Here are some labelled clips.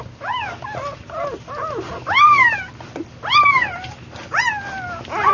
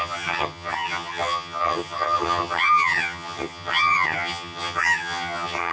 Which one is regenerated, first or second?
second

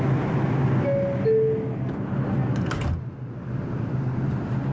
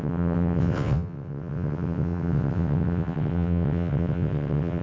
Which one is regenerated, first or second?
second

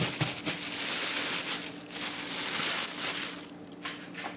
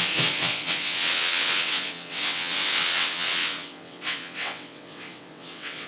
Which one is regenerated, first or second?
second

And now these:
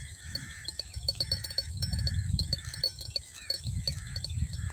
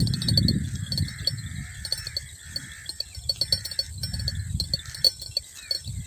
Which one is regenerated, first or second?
first